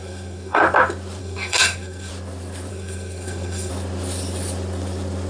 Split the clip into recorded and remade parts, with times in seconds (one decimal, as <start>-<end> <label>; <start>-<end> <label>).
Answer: 0.0-0.6 remade; 0.6-1.2 recorded; 1.2-2.1 remade; 2.1-2.7 recorded; 2.7-3.7 remade; 3.7-5.3 recorded